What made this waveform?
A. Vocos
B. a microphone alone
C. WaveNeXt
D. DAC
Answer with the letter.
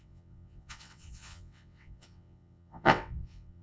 C